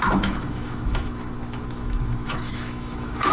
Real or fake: fake